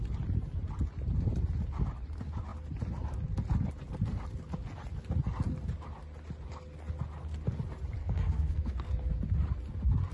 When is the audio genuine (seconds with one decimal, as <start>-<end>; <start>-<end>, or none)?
0.0-8.0; 8.9-10.1

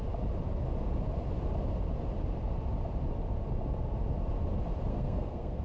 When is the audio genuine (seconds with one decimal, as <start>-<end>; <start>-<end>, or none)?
0.0-4.9